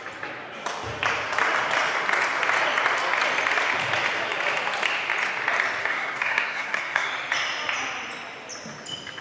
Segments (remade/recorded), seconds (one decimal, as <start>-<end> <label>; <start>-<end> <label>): 0.0-5.8 recorded; 5.8-7.1 remade; 7.1-9.2 recorded